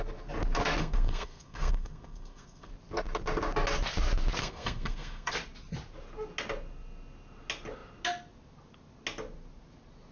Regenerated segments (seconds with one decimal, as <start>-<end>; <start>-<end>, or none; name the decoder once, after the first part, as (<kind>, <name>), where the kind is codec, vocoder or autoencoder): 0.8-2.7 (codec, SNAC); 4.4-5.3